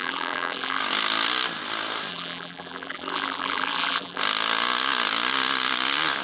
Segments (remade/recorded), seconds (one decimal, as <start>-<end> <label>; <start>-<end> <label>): 0.0-0.8 remade; 0.8-2.1 recorded; 2.1-4.2 remade; 4.2-6.2 recorded